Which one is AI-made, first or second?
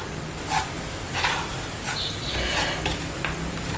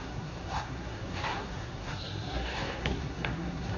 second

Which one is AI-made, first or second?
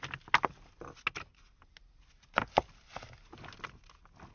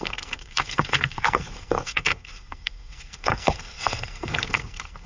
second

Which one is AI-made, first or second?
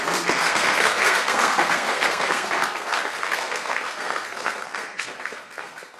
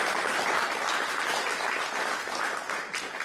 first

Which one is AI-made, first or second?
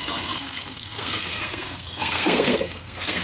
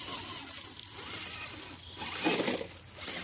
first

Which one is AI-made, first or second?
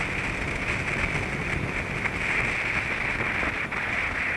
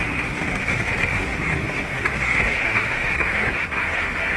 second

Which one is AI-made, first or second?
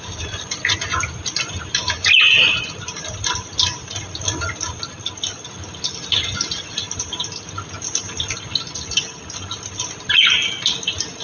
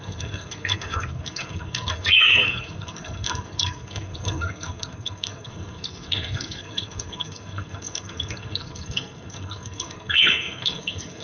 second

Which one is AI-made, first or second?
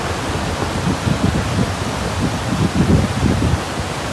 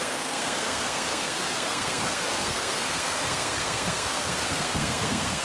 second